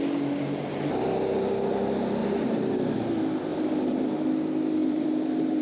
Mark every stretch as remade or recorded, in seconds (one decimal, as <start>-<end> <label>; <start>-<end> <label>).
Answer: 0.0-2.2 recorded; 2.2-2.7 remade; 2.7-3.5 recorded; 3.5-4.0 remade; 4.0-4.8 recorded; 4.8-5.6 remade